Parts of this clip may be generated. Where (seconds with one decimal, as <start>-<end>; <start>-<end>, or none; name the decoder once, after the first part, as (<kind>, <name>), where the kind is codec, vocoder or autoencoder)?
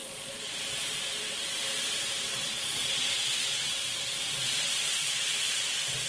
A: 0.0-1.0 (vocoder, Vocos); 2.3-6.1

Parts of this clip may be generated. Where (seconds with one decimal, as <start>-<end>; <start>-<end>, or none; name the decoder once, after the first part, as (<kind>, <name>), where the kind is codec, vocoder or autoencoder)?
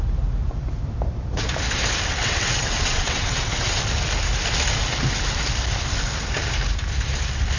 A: 2.2-3.8 (vocoder, WaveNeXt)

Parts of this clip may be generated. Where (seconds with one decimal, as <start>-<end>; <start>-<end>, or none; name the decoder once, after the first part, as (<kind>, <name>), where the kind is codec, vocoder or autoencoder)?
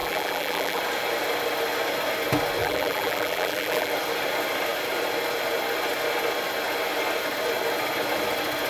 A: 0.0-0.8 (vocoder, BigVGAN v2); 2.6-3.9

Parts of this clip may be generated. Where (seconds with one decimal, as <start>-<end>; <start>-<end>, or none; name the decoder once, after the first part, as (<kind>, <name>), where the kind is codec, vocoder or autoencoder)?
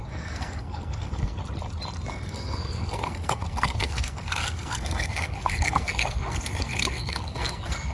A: 0.0-1.4 (codec, SNAC); 2.1-7.9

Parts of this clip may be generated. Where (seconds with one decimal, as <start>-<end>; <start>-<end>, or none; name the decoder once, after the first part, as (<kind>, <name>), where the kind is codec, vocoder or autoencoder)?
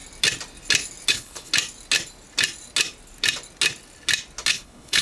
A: 1.1-1.5 (codec, HILCodec); 4.5-5.0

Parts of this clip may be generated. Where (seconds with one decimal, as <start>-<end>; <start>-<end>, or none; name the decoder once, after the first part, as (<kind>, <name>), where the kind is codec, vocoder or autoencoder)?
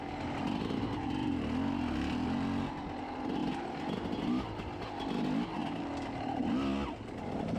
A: none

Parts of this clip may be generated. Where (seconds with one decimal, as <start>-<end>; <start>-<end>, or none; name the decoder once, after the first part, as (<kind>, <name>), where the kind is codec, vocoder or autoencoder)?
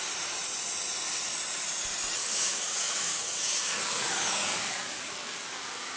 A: 2.2-6.0 (codec, DAC)